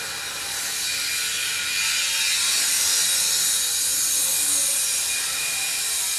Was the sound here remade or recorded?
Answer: recorded